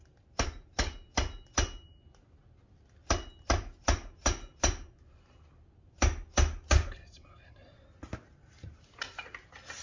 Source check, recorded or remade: recorded